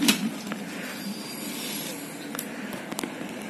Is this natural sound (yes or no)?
yes